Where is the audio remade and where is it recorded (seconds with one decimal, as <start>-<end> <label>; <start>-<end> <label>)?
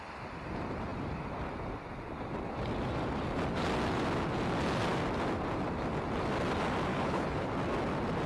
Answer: 0.0-6.9 recorded; 6.9-7.5 remade; 7.5-8.3 recorded